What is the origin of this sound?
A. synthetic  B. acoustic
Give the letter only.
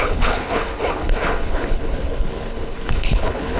A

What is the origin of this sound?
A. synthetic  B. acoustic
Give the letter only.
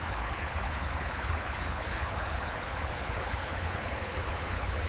A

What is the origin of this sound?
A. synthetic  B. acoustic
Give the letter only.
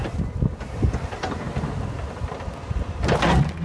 B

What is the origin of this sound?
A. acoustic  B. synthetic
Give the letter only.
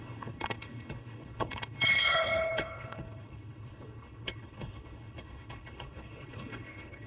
B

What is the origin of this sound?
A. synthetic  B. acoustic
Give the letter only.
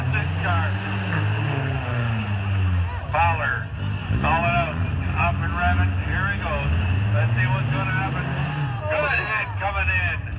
B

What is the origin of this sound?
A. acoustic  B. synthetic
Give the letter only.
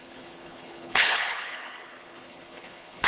B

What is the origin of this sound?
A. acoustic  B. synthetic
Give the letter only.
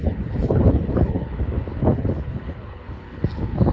B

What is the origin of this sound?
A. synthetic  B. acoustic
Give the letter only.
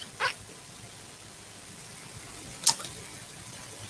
B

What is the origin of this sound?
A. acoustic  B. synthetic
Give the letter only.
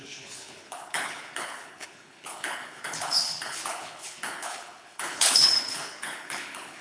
B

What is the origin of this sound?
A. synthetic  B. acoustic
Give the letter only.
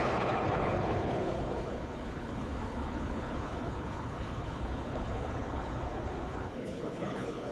A